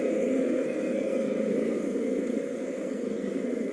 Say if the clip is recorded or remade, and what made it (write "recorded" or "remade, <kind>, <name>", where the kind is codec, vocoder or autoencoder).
remade, codec, SNAC